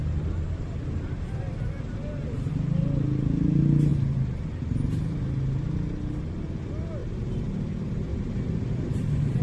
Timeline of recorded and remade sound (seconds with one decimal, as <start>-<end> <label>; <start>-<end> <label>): 0.0-0.8 remade; 0.8-7.0 recorded; 7.0-7.5 remade; 7.5-8.1 recorded; 8.1-9.4 remade